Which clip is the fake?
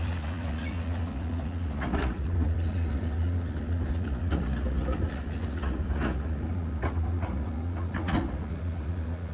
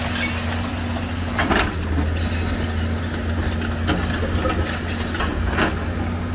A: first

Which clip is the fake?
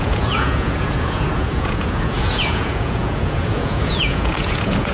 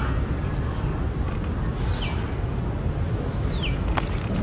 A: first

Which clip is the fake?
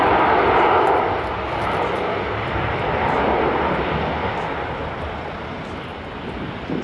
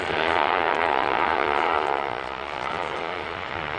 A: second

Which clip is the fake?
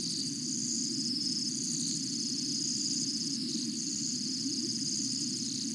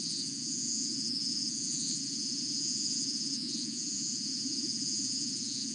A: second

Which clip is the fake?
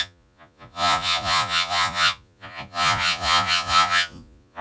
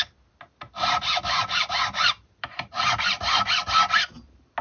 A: first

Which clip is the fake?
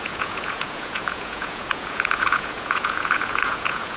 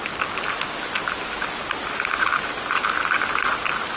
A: first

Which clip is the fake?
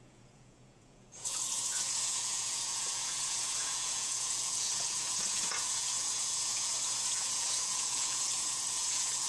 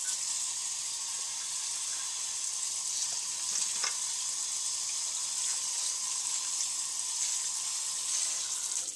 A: first